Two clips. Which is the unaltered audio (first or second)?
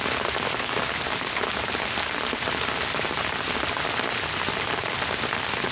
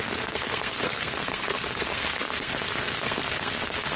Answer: first